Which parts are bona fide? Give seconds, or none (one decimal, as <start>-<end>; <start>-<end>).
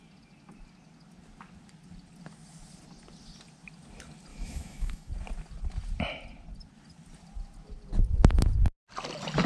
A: 0.0-4.3; 5.1-9.5